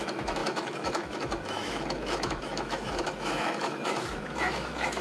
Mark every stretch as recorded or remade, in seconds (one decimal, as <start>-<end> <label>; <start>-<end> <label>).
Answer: 0.0-5.0 remade